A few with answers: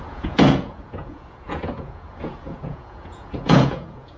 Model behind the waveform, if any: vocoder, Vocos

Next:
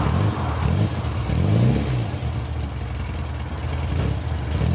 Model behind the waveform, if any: none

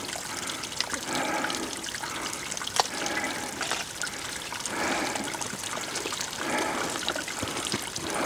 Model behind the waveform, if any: none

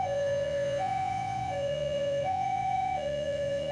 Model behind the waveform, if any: vocoder, Vocos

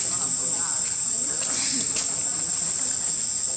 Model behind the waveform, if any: none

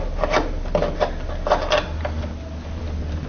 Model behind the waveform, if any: none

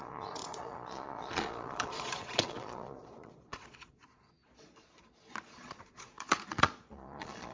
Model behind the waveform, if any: vocoder, Vocos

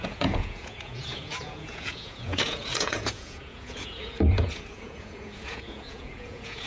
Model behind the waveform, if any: vocoder, Vocos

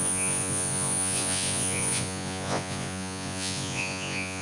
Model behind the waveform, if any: vocoder, Vocos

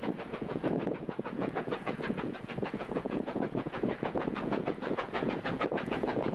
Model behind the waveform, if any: vocoder, Vocos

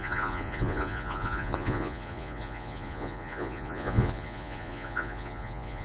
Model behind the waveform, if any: vocoder, Vocos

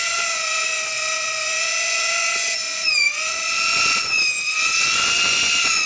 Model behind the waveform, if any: vocoder, Vocos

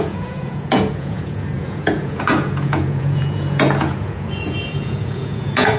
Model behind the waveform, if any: vocoder, Vocos